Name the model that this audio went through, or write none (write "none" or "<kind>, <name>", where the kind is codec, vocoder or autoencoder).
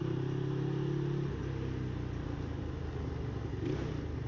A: none